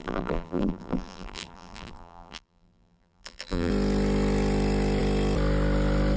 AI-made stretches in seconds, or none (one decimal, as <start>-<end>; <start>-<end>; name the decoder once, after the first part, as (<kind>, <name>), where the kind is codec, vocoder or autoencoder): 0.0-3.7 (vocoder, BigVGAN v2)